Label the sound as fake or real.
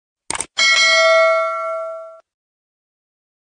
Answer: real